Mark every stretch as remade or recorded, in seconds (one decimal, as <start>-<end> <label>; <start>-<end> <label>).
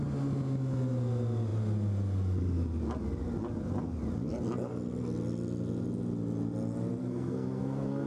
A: 0.0-7.0 recorded; 7.0-8.1 remade